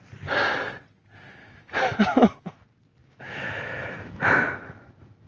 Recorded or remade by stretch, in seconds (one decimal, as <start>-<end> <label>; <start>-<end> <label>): 0.0-1.4 recorded; 1.4-2.6 remade; 2.6-3.0 recorded; 3.0-5.3 remade